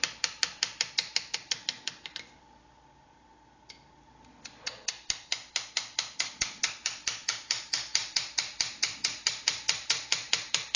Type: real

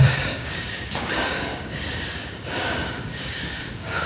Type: fake